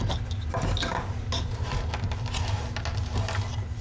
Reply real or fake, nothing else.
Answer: real